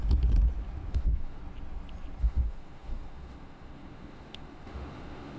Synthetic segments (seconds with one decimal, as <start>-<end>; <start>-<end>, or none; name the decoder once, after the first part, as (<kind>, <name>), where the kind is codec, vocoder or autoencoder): 0.9-1.4 (autoencoder, DAC-VAE); 2.2-5.4